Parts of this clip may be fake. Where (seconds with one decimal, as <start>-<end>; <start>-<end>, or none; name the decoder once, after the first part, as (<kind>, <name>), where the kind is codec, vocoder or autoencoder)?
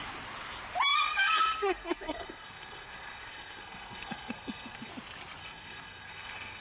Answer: 0.9-4.9 (codec, SNAC); 5.4-6.6